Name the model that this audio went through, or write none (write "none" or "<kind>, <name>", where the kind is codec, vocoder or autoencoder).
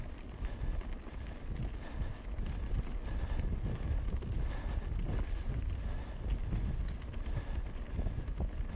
none